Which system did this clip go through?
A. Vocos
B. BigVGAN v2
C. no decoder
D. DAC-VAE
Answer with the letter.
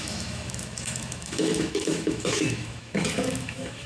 D